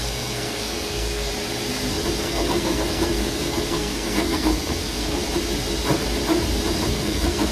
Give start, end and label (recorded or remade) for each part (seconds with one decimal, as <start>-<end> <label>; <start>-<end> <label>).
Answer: 0.0-1.3 remade; 1.3-2.2 recorded; 2.2-5.2 remade; 5.2-6.9 recorded; 6.9-7.5 remade